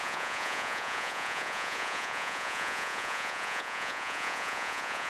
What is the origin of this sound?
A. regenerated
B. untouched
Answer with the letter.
A